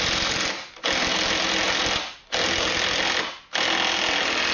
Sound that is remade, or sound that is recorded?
recorded